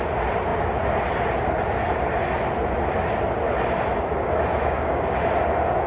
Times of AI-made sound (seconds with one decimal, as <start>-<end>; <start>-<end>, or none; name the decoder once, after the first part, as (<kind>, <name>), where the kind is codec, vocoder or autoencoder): 4.6-5.3 (codec, DAC)